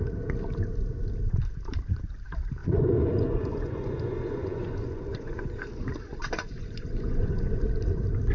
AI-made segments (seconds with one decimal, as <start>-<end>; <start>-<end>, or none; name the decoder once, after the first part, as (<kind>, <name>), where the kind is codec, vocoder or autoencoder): 2.6-7.6 (vocoder, Vocos)